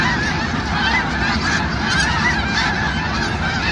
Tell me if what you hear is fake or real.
real